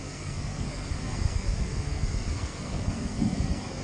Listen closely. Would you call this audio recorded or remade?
remade